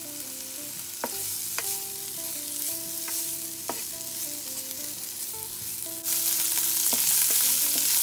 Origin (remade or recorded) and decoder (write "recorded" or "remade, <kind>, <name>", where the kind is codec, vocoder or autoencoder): recorded